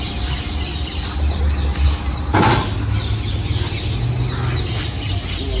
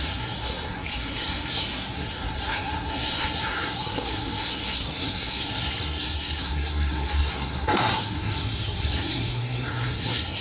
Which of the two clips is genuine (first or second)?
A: first